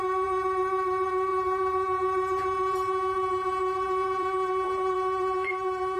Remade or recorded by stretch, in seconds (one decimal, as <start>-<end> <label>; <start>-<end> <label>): 0.0-6.0 remade